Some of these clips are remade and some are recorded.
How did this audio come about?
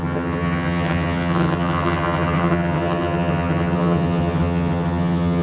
remade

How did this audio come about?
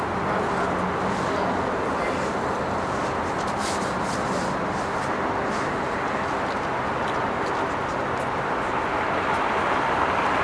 recorded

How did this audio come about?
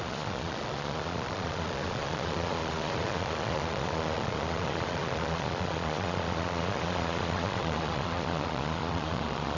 remade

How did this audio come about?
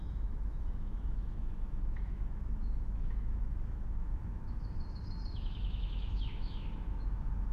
remade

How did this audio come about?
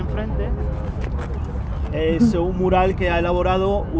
recorded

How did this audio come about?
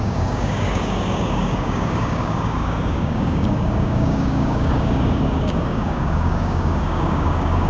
remade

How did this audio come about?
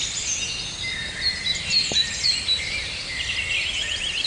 recorded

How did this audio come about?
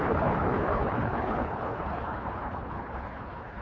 remade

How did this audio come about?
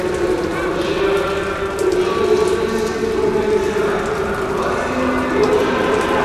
recorded